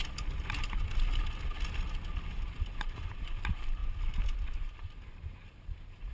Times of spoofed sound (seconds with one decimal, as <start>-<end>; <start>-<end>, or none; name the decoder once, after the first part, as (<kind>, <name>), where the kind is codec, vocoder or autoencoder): 2.7-3.8 (vocoder, BigVGAN v2); 5.0-6.1